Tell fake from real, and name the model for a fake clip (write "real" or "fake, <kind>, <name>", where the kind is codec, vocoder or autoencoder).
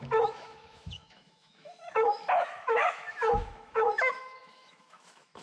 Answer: fake, autoencoder, DAC-VAE